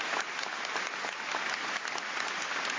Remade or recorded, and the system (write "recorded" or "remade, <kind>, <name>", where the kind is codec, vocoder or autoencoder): recorded